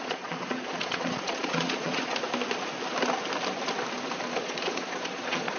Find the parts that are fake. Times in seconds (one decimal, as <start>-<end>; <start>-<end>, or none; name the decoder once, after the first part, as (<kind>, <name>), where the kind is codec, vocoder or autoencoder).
0.0-2.1 (vocoder, Vocos); 4.4-5.6